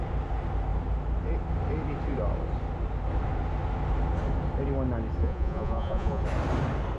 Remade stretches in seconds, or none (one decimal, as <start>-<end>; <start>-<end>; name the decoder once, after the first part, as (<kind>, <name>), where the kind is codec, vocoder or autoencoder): 5.2-6.2 (vocoder, Vocos)

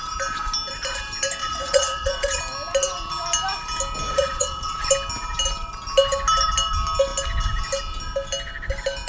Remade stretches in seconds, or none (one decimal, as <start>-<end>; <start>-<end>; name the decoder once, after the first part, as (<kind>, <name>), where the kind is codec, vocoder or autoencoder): 1.4-2.4 (vocoder, Vocos); 4.1-4.9

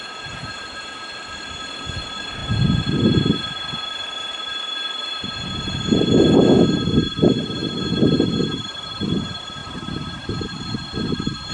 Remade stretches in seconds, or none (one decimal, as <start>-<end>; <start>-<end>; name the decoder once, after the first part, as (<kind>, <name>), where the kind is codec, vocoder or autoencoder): none

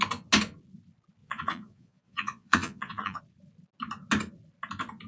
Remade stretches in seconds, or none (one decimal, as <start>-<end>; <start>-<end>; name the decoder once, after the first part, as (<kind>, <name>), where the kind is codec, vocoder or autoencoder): 1.2-3.2 (vocoder, Vocos)

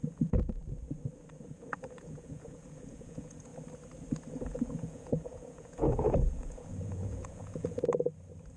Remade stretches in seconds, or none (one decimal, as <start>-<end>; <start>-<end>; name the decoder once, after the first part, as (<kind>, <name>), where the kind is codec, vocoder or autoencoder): 0.0-0.6 (vocoder, Vocos); 1.3-3.5; 4.3-7.9

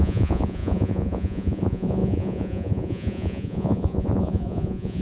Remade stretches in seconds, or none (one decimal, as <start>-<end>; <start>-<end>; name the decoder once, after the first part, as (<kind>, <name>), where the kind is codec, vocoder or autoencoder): 0.0-5.0 (vocoder, Vocos)

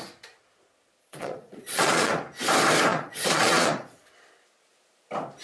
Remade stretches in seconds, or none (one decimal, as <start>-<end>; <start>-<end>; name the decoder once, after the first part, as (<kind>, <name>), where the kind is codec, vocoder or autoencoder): 1.0-2.1 (vocoder, Vocos); 2.9-4.1

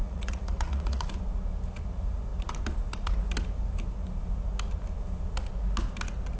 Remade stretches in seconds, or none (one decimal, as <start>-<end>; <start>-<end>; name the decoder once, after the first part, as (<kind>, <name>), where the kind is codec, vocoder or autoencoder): 0.0-1.2 (vocoder, Vocos)